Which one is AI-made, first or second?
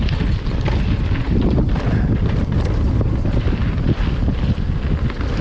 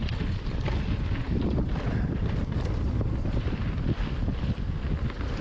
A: second